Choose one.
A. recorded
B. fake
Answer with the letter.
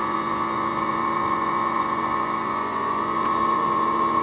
B